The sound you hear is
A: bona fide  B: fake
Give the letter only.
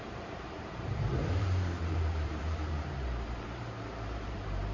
B